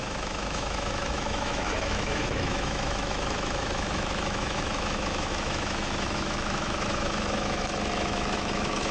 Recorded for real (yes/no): no